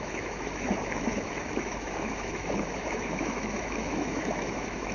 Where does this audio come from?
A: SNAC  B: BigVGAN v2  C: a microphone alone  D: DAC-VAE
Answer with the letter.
D